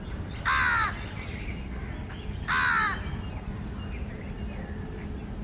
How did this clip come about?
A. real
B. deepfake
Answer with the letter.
A